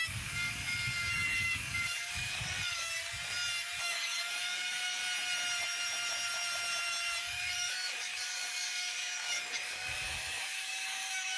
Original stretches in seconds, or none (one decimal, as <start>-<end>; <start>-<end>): 2.9-3.8; 5.0-7.2